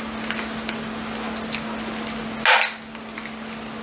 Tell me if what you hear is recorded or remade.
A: recorded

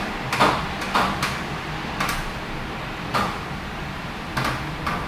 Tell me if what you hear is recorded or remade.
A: remade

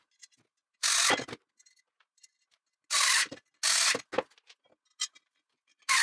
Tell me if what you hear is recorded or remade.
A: recorded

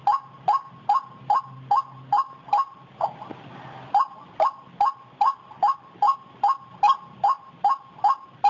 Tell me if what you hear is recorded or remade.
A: recorded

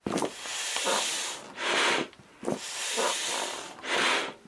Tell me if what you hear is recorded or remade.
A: recorded